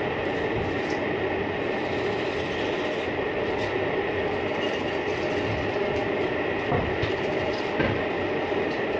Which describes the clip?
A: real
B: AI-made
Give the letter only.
A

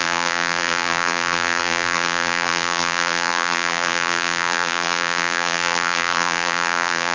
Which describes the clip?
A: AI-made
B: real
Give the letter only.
A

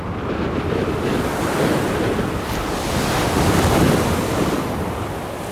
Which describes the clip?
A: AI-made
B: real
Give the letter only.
B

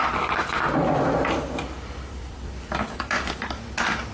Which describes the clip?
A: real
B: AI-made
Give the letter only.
B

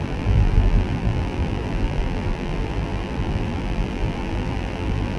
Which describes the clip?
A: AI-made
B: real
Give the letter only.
A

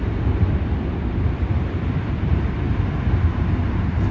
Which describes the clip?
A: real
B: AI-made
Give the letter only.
B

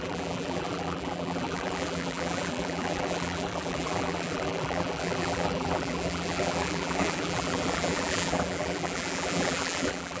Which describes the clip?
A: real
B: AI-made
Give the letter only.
B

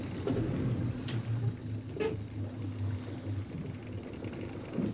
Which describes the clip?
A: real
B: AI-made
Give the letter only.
A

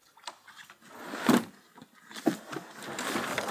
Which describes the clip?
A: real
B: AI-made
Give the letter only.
A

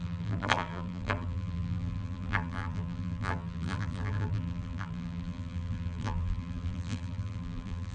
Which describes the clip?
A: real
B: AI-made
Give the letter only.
B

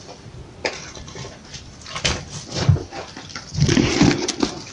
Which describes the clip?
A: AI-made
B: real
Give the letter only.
A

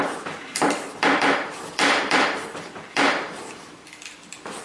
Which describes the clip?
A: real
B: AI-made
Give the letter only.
B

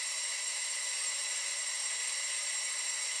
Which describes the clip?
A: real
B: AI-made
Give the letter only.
B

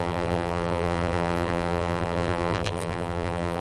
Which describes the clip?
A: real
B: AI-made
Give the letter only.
B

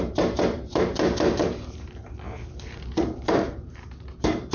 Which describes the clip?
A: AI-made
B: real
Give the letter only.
A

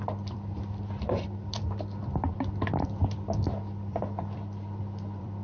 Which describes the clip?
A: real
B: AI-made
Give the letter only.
B